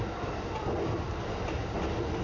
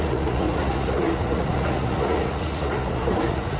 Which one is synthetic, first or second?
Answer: second